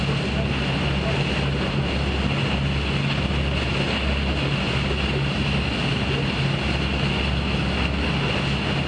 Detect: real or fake real